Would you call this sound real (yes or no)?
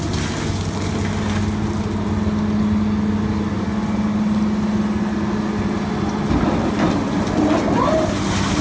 yes